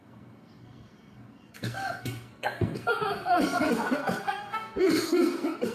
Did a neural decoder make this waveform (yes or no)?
yes